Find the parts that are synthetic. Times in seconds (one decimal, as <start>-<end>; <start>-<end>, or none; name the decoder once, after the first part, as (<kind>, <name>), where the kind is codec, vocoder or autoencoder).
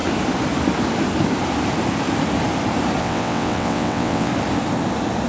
3.0-4.3 (vocoder, WaveNeXt)